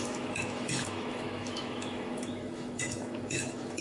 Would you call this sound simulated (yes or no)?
yes